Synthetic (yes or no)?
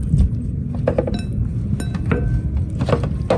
no